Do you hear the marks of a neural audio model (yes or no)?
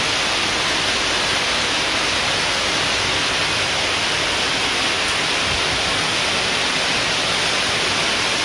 no